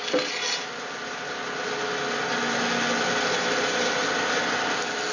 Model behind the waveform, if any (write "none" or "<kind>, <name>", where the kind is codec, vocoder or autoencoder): none